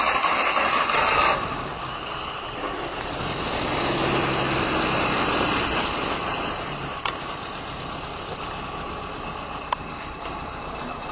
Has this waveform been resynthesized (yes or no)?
yes